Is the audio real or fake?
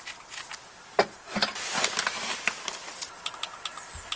real